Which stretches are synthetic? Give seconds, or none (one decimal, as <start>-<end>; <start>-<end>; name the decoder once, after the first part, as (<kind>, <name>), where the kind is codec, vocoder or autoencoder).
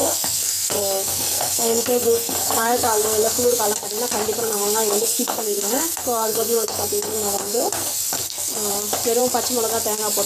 0.0-3.6 (codec, SNAC); 4.4-8.7